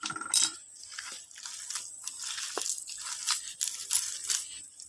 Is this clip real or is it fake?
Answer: real